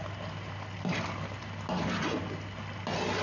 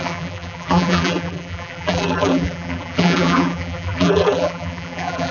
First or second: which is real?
first